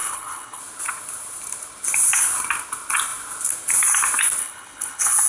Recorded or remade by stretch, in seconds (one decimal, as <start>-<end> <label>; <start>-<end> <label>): 0.0-0.6 remade; 0.6-4.4 recorded; 4.4-5.3 remade